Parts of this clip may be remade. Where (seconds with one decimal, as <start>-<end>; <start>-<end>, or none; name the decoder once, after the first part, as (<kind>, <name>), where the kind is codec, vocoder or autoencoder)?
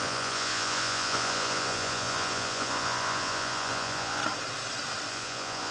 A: 0.0-4.2 (vocoder, Vocos); 5.1-5.7